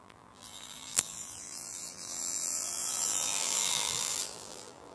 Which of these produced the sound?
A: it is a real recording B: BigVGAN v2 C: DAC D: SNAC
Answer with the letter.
B